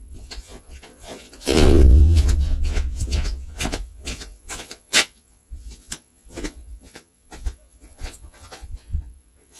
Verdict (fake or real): fake